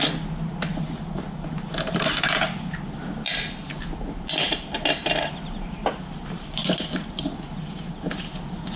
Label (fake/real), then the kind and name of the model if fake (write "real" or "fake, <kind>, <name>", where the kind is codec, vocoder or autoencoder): real